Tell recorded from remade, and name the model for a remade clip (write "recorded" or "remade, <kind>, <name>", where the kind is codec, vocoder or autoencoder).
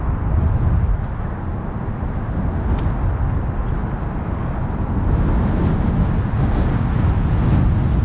recorded